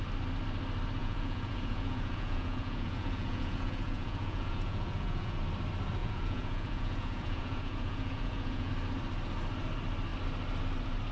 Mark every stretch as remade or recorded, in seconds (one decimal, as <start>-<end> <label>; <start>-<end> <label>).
0.0-1.0 recorded; 1.0-5.4 remade; 5.4-6.0 recorded; 6.0-8.7 remade; 8.7-11.1 recorded